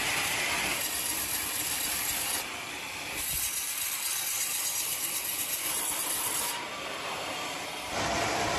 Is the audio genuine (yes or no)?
no